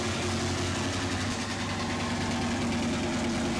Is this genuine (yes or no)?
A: yes